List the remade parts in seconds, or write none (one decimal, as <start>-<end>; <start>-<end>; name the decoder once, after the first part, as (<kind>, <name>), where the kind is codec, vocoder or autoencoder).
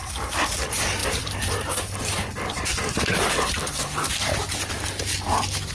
1.0-4.1 (vocoder, BigVGAN v2)